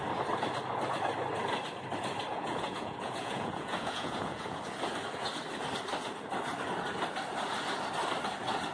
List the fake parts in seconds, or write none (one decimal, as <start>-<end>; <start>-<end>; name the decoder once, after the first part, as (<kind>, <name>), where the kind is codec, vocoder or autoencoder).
2.3-4.6 (vocoder, Vocos)